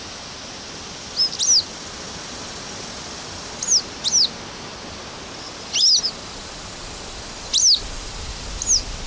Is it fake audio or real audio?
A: real